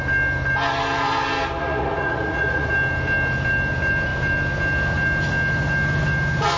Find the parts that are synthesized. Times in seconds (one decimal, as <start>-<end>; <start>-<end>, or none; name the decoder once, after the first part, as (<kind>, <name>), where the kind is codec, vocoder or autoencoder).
1.6-2.7 (vocoder, Vocos)